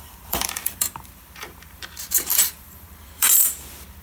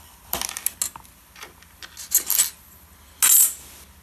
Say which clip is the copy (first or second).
first